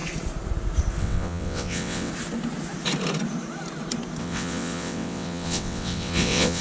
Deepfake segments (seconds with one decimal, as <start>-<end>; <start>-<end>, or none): 1.0-2.1; 4.2-6.6